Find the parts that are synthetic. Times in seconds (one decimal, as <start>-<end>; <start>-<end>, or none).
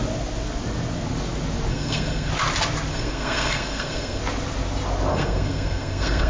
1.7-2.3; 2.9-4.2; 5.1-6.3